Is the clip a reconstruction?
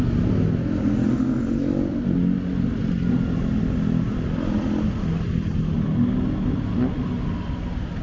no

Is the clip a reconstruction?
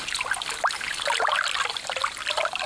no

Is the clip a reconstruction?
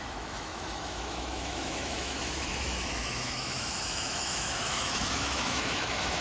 yes